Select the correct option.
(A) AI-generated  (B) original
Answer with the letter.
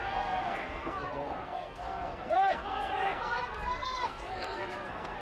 A